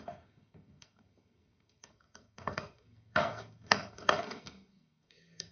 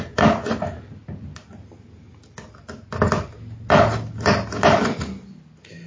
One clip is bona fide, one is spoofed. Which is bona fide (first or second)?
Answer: second